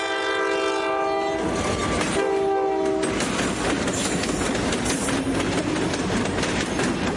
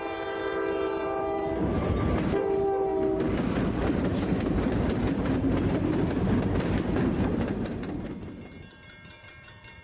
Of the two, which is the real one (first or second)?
first